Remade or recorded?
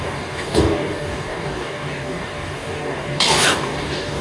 remade